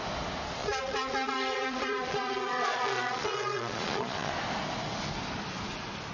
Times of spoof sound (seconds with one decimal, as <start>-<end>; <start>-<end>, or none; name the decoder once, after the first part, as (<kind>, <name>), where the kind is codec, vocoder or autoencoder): 0.6-4.3 (vocoder, Vocos)